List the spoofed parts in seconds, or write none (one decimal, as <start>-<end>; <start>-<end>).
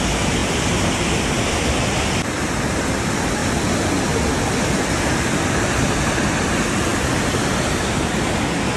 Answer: none